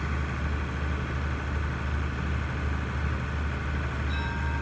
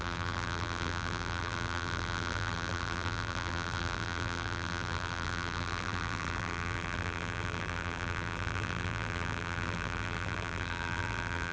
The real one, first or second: first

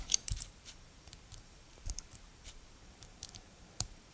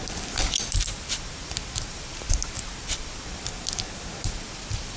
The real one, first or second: second